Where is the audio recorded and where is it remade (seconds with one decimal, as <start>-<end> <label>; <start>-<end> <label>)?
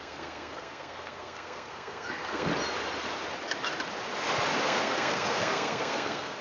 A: 0.0-2.5 remade; 2.5-4.6 recorded; 4.6-6.4 remade